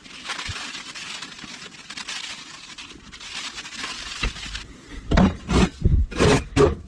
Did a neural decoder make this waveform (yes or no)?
no